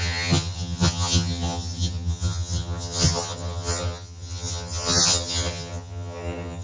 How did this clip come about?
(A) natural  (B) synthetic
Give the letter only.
B